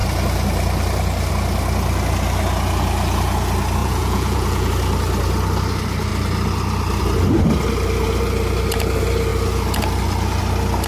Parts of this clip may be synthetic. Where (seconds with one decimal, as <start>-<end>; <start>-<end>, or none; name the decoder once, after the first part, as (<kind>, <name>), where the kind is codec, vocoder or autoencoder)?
3.8-4.7 (vocoder, Vocos)